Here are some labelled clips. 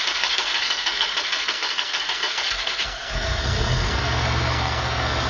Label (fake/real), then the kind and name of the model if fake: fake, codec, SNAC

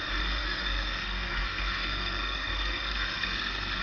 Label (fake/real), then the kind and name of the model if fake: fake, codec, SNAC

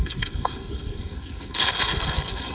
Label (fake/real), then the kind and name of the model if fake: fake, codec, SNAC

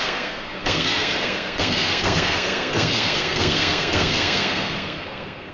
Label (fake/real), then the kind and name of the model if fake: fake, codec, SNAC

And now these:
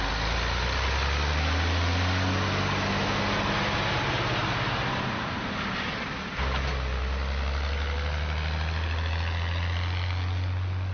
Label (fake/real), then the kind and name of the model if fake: real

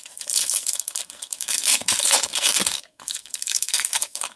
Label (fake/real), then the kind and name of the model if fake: fake, codec, SNAC